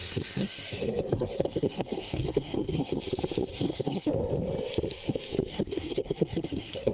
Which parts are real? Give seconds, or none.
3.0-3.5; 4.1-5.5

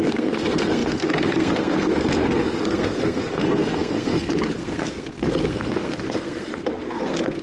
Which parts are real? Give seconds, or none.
none

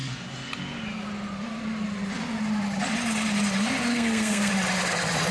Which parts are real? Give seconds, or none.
0.0-3.9; 4.5-5.3

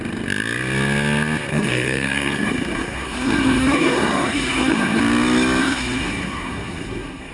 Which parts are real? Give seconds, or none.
0.0-1.5; 5.0-5.6

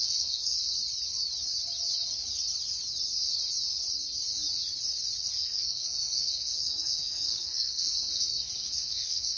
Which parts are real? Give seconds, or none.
0.6-5.2

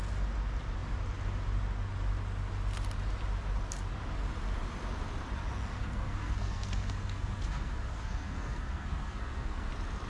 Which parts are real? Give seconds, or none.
0.0-5.7; 9.7-10.1

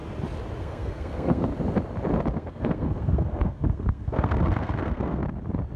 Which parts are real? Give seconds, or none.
0.0-0.6; 1.5-2.3; 5.2-5.8